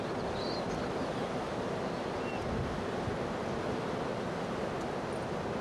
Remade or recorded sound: recorded